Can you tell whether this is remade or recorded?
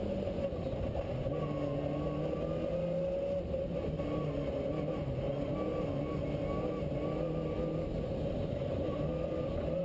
recorded